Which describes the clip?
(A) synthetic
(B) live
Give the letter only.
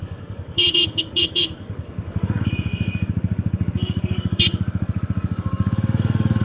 A